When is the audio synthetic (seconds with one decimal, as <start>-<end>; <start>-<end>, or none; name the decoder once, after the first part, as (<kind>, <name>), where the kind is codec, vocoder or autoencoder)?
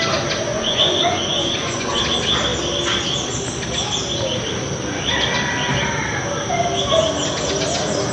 0.5-2.0 (vocoder, Vocos)